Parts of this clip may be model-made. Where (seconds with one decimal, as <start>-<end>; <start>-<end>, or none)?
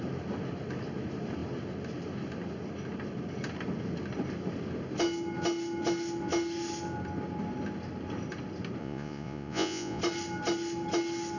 8.8-10.0